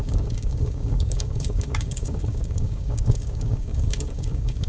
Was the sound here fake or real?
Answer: fake